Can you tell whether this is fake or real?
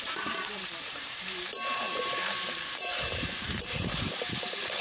fake